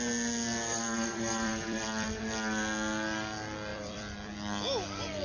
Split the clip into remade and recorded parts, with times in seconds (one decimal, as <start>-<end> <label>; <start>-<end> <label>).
0.0-0.7 recorded; 0.7-2.2 remade; 2.2-3.7 recorded; 3.7-4.3 remade; 4.3-5.2 recorded